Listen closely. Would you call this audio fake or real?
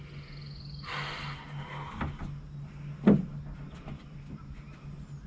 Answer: real